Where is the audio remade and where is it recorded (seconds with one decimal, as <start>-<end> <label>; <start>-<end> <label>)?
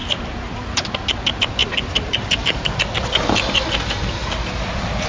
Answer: 0.0-0.9 remade; 0.9-1.6 recorded; 1.6-3.6 remade; 3.6-4.2 recorded; 4.2-5.1 remade